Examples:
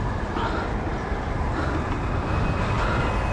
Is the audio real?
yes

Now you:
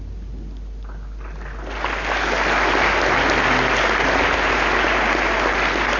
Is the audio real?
yes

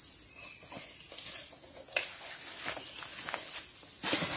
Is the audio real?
yes